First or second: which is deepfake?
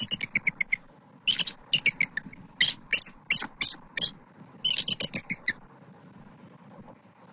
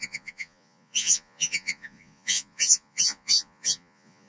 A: second